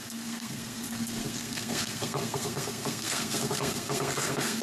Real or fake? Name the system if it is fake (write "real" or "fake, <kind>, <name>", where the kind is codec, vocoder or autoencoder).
fake, codec, SNAC